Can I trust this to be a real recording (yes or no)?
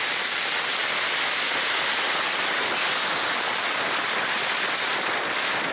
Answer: yes